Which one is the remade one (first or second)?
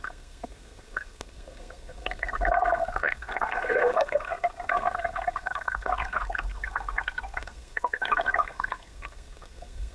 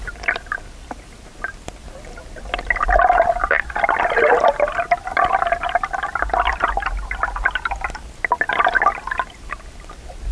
first